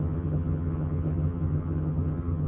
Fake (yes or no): yes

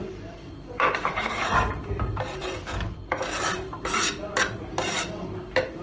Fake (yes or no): yes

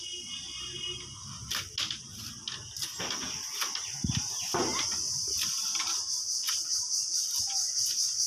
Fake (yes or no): no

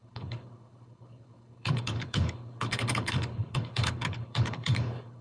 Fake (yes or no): yes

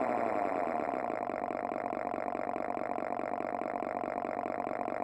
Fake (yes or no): no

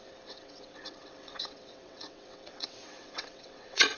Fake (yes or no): yes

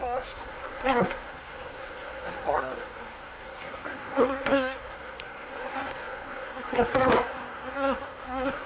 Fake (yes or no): yes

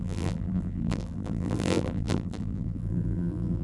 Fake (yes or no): yes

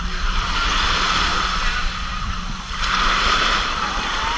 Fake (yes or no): no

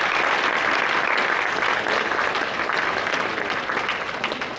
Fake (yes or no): no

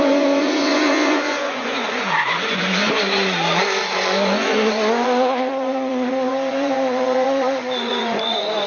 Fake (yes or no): yes